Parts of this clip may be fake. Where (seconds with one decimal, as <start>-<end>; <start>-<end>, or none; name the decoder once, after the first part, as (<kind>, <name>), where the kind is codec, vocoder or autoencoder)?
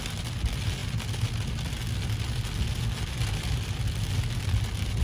none